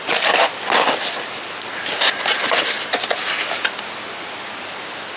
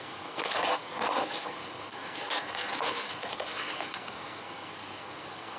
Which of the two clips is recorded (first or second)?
first